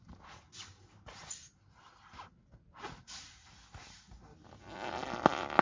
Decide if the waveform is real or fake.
real